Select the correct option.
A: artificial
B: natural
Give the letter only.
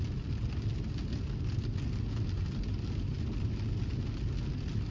B